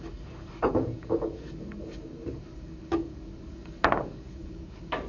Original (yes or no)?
no